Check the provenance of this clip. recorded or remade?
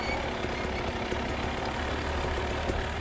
recorded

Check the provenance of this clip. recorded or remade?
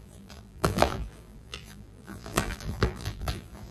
remade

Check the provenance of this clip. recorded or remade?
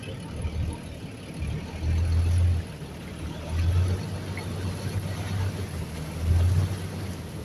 recorded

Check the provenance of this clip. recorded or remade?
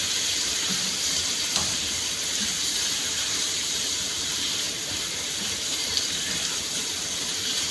remade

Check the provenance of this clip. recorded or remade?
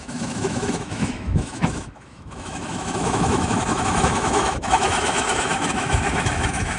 remade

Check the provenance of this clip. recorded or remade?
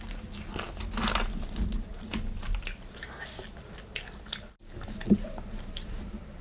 recorded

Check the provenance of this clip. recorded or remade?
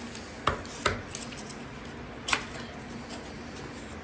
recorded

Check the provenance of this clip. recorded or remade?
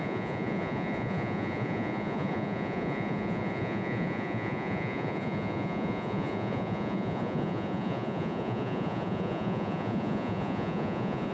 remade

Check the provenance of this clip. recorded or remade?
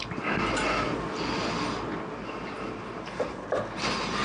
recorded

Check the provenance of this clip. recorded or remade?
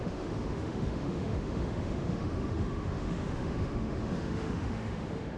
remade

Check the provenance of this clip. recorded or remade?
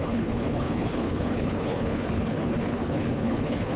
remade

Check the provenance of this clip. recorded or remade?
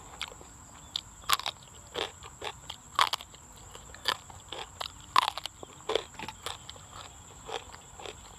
recorded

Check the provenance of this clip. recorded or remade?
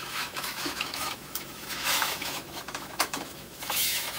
remade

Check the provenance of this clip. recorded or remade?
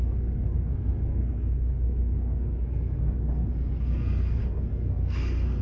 remade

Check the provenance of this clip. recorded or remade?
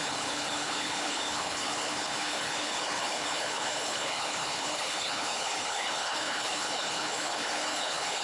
remade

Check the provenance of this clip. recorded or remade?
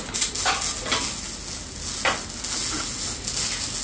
recorded